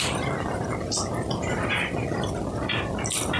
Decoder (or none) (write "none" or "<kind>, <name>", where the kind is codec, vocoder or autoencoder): vocoder, BigVGAN v2